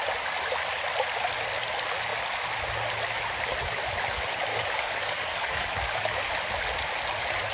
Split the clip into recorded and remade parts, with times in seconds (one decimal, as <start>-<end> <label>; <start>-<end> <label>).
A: 0.0-4.5 recorded; 4.5-6.3 remade; 6.3-7.5 recorded

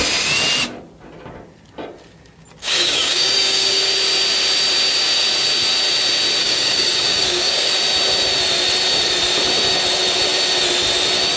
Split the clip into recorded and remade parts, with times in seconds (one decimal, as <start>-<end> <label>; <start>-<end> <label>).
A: 0.0-2.6 recorded; 2.6-3.9 remade; 3.9-6.4 recorded; 6.4-7.7 remade; 7.7-11.4 recorded

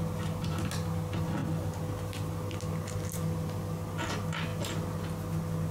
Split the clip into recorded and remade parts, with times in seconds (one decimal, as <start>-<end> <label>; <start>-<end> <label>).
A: 0.0-5.7 recorded